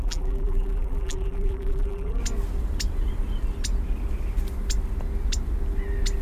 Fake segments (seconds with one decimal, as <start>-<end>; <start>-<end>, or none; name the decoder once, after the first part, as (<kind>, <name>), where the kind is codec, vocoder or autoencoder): 0.0-2.2 (vocoder, BigVGAN v2)

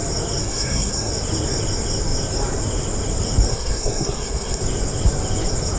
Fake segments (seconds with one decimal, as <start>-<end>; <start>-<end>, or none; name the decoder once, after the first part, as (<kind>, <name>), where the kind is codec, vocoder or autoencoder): 0.4-1.1 (codec, SNAC); 3.5-4.6

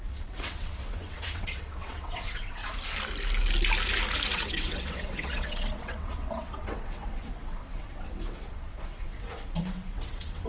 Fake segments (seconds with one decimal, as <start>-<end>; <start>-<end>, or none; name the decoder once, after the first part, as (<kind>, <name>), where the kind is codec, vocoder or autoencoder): 0.0-2.6 (vocoder, WaveNeXt); 4.3-10.5

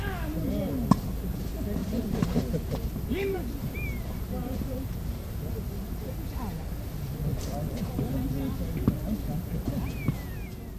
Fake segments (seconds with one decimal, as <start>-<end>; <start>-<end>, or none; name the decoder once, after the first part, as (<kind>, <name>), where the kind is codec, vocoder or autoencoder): 1.8-5.5 (vocoder, BigVGAN v2)

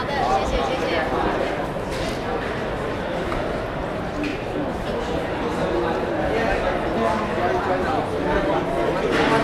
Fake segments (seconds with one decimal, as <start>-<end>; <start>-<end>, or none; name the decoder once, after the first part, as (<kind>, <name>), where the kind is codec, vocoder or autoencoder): none

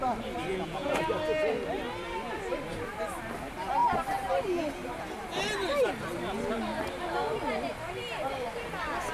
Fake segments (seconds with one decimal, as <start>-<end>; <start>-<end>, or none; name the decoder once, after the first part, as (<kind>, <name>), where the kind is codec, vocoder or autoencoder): 0.5-1.0 (vocoder, Vocos)

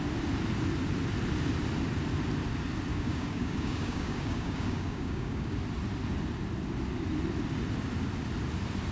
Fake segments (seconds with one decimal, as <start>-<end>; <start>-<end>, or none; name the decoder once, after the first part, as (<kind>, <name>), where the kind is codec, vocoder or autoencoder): 2.9-5.5 (codec, DAC)